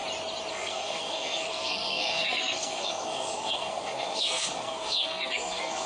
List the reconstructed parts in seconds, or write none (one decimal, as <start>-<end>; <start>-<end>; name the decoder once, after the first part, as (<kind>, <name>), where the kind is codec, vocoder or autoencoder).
0.5-5.9 (codec, SNAC)

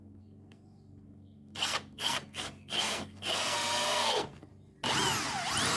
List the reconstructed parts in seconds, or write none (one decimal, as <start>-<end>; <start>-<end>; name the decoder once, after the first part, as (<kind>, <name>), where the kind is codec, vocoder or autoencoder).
0.0-4.5 (codec, SNAC)

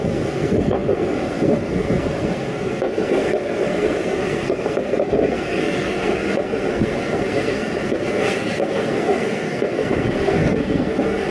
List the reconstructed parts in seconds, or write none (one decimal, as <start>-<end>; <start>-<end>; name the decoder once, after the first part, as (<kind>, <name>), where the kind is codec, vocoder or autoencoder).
0.0-11.3 (codec, SNAC)